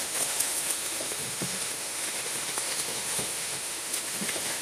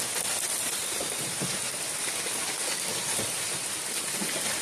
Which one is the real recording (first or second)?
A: second